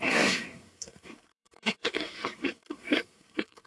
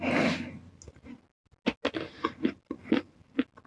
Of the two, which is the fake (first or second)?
first